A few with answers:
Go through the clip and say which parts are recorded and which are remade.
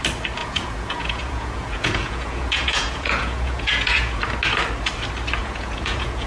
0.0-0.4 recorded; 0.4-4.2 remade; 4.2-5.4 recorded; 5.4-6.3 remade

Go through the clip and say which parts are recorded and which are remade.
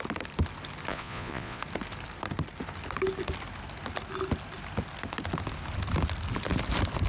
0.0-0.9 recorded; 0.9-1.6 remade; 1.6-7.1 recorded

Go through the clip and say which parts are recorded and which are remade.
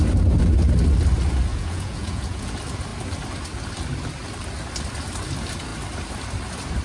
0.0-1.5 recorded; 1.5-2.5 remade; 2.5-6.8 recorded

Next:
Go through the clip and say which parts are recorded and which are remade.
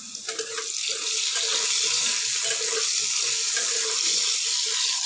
0.0-5.1 recorded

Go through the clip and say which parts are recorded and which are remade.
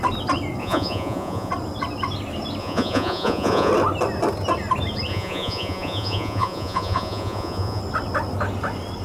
0.0-0.6 recorded; 0.6-1.5 remade; 1.5-2.6 recorded; 2.6-3.7 remade; 3.7-5.1 recorded; 5.1-7.8 remade; 7.8-9.0 recorded